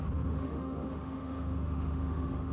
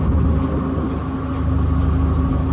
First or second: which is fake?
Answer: first